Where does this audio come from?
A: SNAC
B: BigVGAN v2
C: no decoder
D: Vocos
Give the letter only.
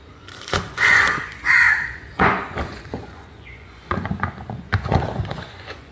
D